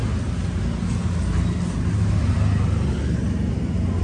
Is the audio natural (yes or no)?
yes